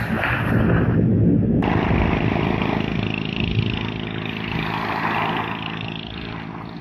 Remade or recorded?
recorded